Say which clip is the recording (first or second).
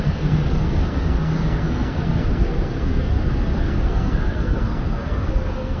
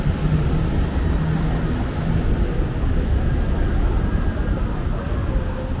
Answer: second